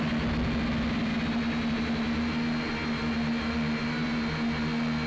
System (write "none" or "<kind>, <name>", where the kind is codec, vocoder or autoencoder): none